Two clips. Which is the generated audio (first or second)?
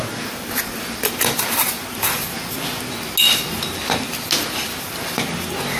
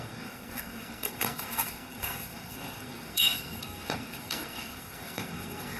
second